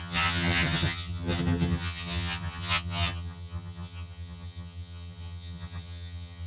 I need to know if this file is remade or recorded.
remade